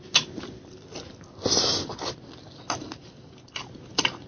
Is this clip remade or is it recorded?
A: recorded